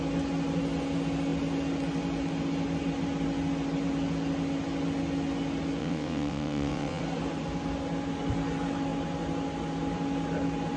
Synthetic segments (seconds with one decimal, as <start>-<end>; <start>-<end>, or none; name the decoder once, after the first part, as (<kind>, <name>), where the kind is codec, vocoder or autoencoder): 5.8-7.0 (vocoder, WaveNeXt)